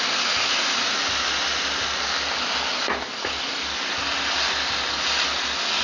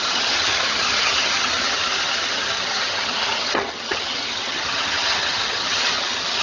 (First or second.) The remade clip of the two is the second